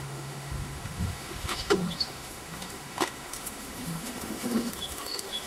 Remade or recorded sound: remade